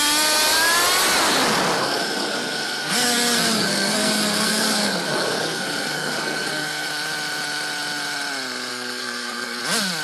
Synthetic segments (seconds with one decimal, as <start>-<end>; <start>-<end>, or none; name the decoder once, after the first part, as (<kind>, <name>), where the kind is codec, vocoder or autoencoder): 1.8-6.9 (codec, SNAC); 8.7-9.6